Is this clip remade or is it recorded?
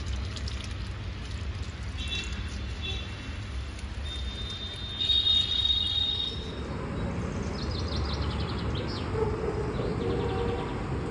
recorded